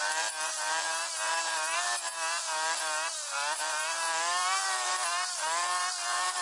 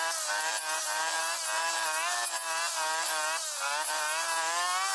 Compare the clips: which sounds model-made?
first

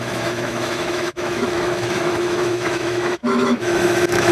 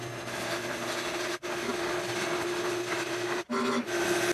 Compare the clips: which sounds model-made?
first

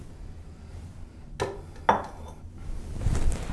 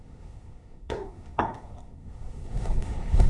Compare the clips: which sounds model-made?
second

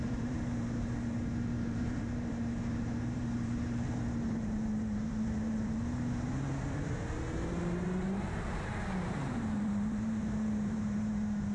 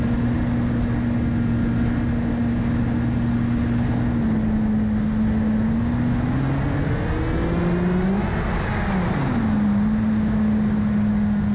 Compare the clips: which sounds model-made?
first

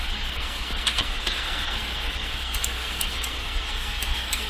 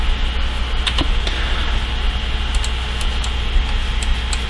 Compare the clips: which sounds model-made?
first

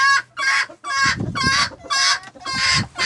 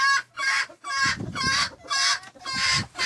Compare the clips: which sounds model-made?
second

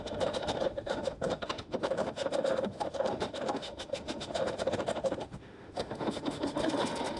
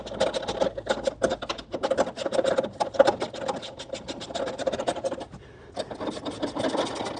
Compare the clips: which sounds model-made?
first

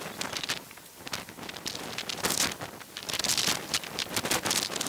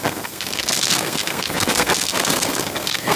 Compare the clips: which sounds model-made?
second